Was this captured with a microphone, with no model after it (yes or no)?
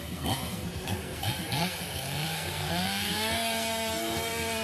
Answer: no